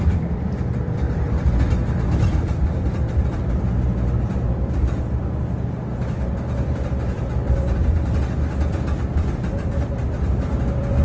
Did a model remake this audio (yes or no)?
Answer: yes